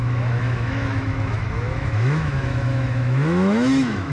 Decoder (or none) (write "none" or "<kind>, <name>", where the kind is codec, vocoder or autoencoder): autoencoder, DAC-VAE